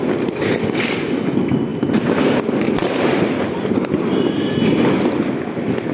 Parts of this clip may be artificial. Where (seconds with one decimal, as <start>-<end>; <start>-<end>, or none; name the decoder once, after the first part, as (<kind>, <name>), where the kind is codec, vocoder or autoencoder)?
none